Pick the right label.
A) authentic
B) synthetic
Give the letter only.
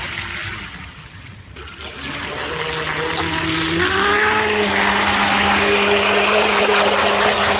A